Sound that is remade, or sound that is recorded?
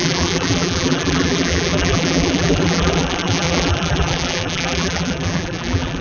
remade